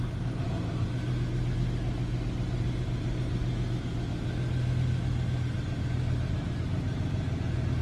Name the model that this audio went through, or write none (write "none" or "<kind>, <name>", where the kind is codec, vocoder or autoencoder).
none